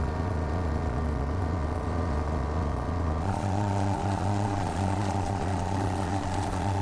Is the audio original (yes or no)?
no